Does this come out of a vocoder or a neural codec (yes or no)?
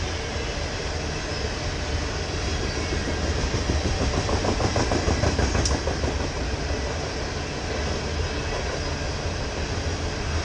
no